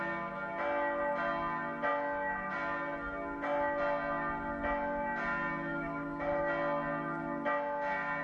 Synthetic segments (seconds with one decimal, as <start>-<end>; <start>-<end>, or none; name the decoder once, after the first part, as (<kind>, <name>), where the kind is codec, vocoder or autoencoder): 5.7-6.4 (autoencoder, DAC-VAE)